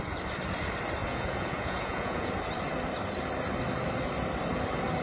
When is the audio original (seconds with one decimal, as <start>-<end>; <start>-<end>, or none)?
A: 0.0-1.0; 2.3-5.0